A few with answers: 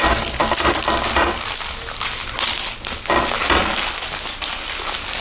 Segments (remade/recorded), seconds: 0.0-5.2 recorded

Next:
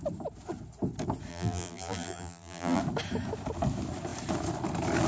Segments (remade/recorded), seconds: 0.0-1.3 recorded; 1.3-2.8 remade; 2.8-5.1 recorded

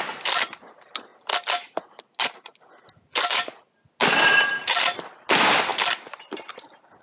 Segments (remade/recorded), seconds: 0.0-5.7 recorded; 5.7-6.5 remade; 6.5-7.0 recorded

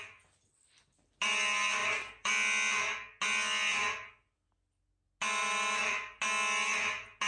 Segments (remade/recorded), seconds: 0.0-1.8 recorded; 1.8-2.3 remade; 2.3-5.4 recorded; 5.4-6.2 remade; 6.2-7.3 recorded

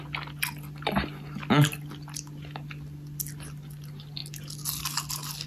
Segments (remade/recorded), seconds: 0.0-5.5 recorded

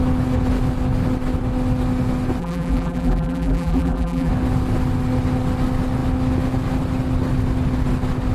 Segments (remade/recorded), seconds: 0.0-2.4 recorded; 2.4-4.3 remade; 4.3-8.3 recorded

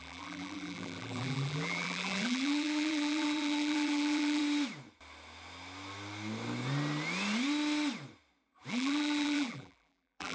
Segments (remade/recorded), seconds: 0.0-4.4 remade; 4.4-8.7 recorded; 8.7-10.3 remade